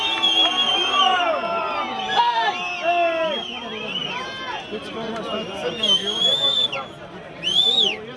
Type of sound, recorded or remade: recorded